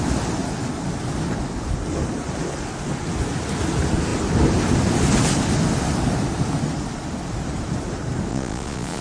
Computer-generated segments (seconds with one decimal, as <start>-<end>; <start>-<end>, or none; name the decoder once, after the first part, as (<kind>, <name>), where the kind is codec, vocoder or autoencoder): 8.3-9.0 (vocoder, Vocos)